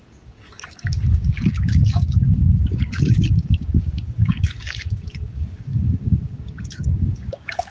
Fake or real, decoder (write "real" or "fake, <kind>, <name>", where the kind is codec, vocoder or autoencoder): fake, codec, DAC